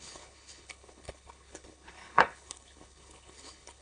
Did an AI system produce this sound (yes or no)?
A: yes